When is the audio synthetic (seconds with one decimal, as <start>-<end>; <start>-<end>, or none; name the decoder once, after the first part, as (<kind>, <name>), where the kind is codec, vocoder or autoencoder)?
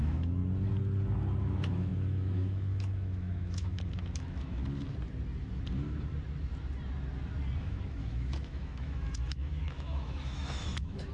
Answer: 0.0-0.4 (autoencoder, DAC-VAE); 1.4-4.6; 7.6-11.1